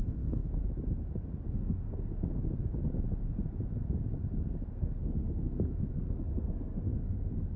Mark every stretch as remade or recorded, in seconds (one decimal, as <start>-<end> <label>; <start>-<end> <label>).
0.0-0.4 remade; 0.4-1.5 recorded; 1.5-2.4 remade; 2.4-4.7 recorded; 4.7-7.6 remade